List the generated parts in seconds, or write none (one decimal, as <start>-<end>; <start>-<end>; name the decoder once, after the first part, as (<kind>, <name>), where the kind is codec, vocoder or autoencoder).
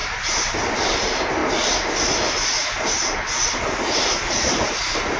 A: 0.6-1.4 (vocoder, BigVGAN v2); 4.3-5.2